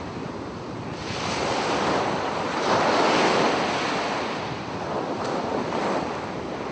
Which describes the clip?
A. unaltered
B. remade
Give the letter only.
A